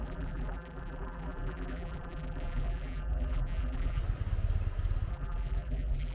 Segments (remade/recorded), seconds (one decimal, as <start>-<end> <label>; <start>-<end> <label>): 0.0-4.0 remade; 4.0-5.1 recorded; 5.1-6.1 remade